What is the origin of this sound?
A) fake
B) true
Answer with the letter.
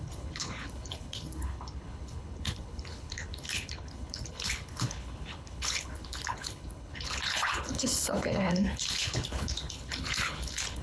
A